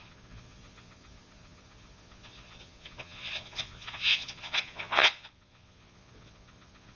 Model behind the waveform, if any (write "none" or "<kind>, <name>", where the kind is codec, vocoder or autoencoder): vocoder, Vocos